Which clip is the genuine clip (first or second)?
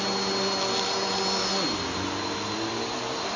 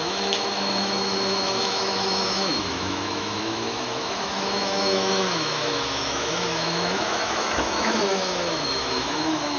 first